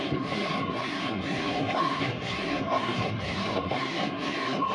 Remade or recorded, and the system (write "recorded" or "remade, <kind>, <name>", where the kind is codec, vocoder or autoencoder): remade, codec, SNAC